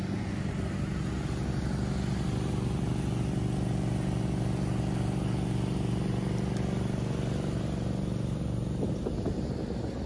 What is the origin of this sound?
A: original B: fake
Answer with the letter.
A